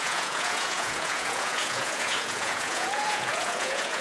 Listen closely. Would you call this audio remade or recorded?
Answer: remade